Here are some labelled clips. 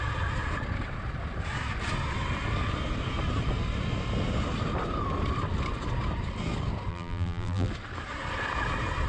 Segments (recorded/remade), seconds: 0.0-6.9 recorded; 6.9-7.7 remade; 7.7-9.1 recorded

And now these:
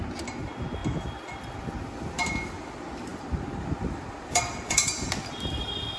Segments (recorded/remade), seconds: 0.0-3.1 recorded; 3.1-5.1 remade; 5.1-6.0 recorded

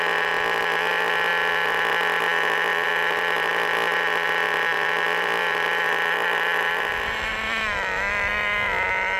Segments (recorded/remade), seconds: 0.0-2.7 recorded; 2.7-6.7 remade; 6.7-7.3 recorded; 7.3-8.3 remade; 8.3-9.2 recorded